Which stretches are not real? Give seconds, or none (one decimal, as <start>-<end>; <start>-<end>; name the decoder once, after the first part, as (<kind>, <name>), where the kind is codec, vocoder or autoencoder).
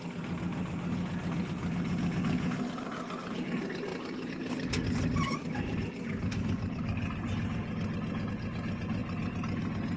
3.9-8.3 (vocoder, BigVGAN v2)